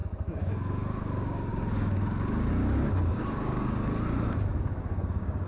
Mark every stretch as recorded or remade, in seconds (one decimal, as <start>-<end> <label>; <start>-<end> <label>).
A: 0.0-3.9 remade; 3.9-4.5 recorded; 4.5-5.5 remade